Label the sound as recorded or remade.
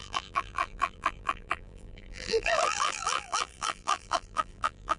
remade